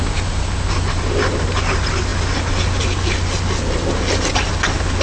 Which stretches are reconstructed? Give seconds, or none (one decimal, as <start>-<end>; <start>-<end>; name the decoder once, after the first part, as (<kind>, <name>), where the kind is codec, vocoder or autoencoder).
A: none